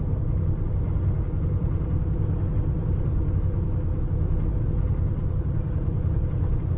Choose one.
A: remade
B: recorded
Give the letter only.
A